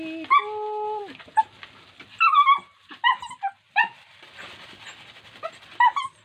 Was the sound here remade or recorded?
recorded